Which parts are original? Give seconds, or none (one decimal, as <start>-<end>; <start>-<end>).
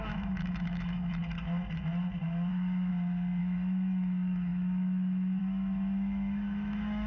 1.2-2.5; 2.9-3.4